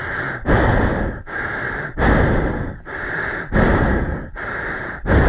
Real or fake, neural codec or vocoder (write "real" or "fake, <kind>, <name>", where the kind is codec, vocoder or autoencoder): real